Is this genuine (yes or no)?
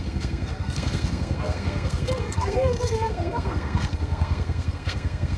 no